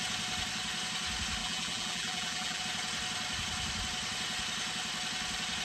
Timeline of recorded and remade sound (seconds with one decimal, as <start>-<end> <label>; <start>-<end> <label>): 0.0-1.4 recorded; 1.4-2.6 remade; 2.6-5.6 recorded